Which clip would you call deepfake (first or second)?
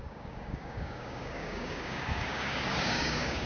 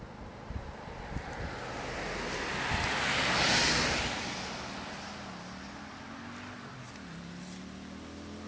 first